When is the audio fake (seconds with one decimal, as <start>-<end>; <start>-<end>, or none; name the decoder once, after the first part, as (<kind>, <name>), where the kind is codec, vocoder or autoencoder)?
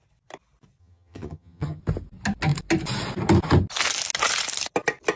0.8-1.8 (vocoder, HiFi-GAN)